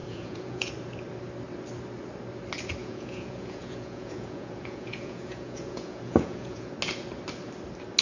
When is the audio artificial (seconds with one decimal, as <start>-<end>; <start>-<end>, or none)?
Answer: 0.0-0.7; 2.8-6.7